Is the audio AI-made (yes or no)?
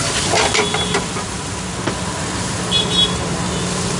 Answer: no